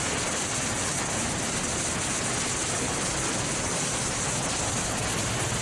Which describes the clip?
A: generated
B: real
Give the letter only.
B